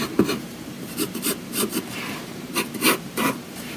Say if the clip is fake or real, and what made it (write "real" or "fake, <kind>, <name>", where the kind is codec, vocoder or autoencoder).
fake, vocoder, BigVGAN v2